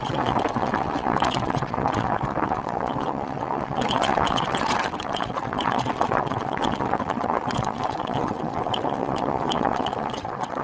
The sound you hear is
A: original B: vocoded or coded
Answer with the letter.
B